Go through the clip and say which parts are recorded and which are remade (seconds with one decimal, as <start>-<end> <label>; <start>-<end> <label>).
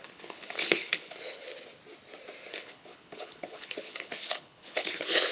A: 0.0-1.5 remade; 1.5-2.5 recorded; 2.5-5.3 remade